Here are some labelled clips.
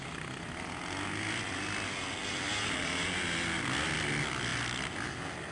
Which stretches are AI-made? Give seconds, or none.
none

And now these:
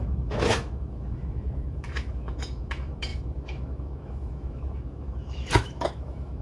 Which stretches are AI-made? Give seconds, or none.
0.0-6.4 (autoencoder, DAC-VAE)

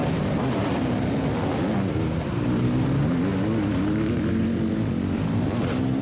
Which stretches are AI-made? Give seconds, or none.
none

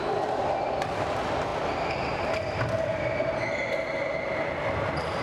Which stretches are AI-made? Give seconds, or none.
none

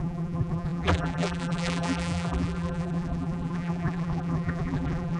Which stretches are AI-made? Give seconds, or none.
0.0-5.2 (vocoder, BigVGAN v2)

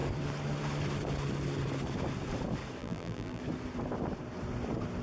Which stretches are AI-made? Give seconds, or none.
2.8-3.4 (vocoder, BigVGAN v2)

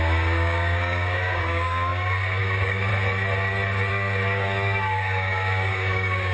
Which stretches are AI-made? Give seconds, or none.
0.0-2.9 (codec, DAC); 3.9-6.3